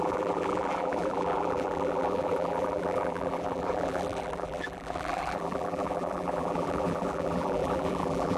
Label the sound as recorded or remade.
remade